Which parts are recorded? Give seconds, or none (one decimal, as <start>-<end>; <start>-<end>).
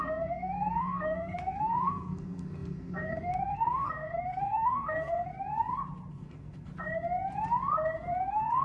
5.3-6.1; 6.7-8.2